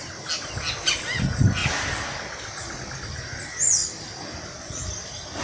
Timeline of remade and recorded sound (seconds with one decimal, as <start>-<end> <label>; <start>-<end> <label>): 0.0-5.4 recorded

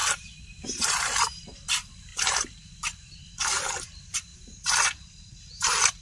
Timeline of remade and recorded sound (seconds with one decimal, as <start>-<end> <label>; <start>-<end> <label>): 0.0-6.0 remade

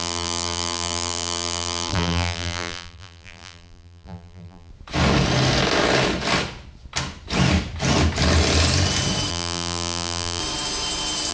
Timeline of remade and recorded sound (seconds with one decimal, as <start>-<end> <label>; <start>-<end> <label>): 0.0-4.7 remade; 4.7-9.3 recorded; 9.3-10.4 remade; 10.4-11.3 recorded

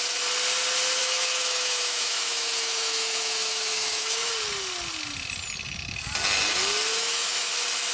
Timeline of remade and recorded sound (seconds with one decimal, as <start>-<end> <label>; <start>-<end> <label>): 0.0-1.0 recorded; 1.0-4.3 remade; 4.3-6.9 recorded; 6.9-7.5 remade; 7.5-7.9 recorded

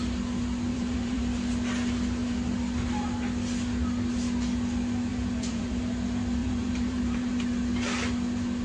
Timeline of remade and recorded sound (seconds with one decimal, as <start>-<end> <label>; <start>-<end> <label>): 0.0-0.7 recorded; 0.7-1.2 remade; 1.2-5.1 recorded; 5.1-5.8 remade; 5.8-6.4 recorded; 6.4-7.4 remade; 7.4-8.6 recorded

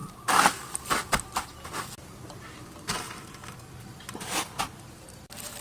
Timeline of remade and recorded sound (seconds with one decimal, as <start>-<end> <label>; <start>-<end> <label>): 0.0-3.4 remade; 3.4-4.0 recorded; 4.0-5.6 remade

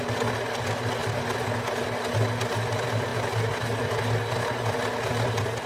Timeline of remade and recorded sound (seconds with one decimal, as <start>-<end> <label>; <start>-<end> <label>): 0.0-5.7 recorded

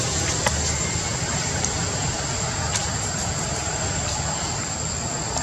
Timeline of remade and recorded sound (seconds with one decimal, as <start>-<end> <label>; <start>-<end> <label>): 0.0-1.1 recorded; 1.1-1.7 remade; 1.7-5.4 recorded